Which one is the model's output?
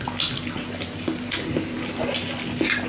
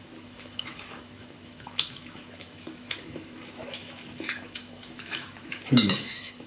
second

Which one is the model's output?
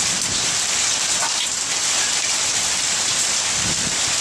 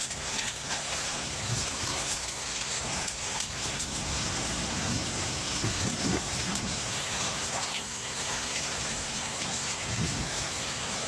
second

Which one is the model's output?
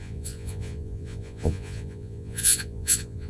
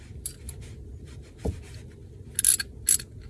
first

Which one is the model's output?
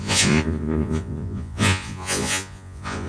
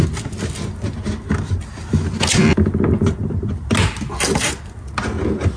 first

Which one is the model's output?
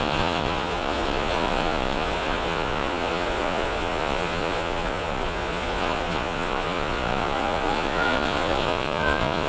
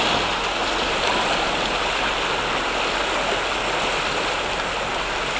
first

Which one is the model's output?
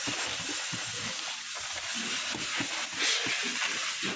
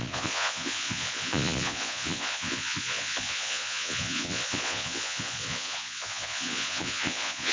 second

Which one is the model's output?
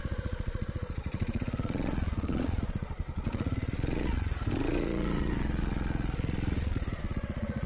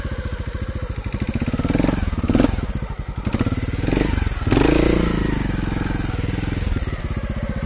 first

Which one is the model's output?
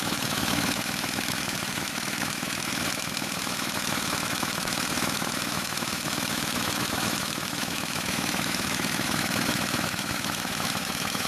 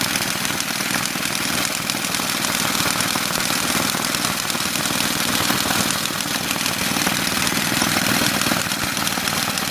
first